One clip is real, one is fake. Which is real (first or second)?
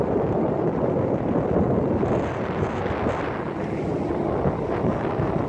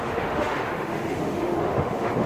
first